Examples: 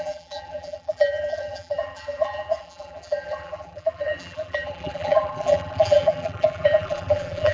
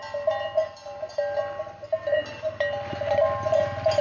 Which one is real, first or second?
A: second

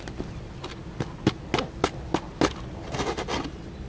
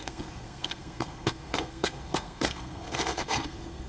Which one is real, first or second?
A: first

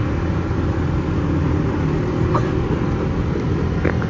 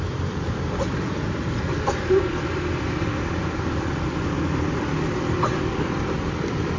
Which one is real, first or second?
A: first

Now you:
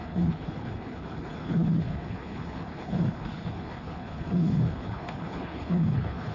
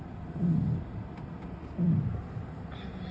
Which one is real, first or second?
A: second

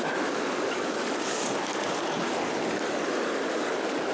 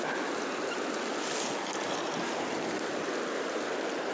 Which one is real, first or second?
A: second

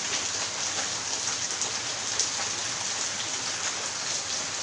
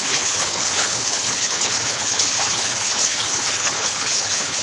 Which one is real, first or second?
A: first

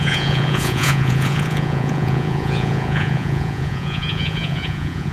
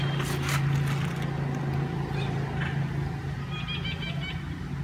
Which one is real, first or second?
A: second